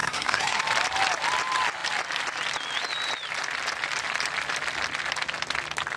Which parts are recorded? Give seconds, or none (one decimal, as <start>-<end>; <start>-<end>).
0.6-6.0